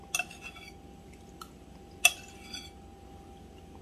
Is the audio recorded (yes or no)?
yes